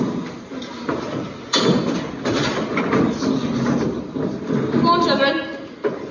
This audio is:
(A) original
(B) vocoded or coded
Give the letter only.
A